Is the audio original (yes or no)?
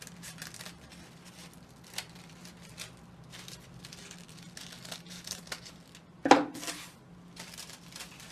yes